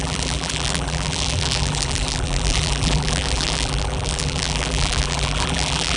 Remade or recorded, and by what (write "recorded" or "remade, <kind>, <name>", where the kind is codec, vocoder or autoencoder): remade, vocoder, BigVGAN v2